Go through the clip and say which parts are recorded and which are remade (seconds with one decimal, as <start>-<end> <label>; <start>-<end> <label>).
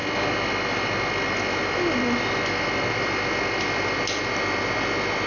0.0-5.3 recorded